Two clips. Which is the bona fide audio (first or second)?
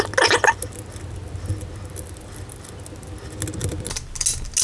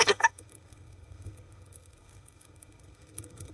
first